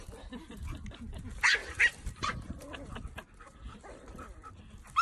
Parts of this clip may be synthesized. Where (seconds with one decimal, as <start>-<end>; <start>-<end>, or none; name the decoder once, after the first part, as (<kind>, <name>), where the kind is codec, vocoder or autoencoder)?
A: 1.6-4.6 (vocoder, BigVGAN v2)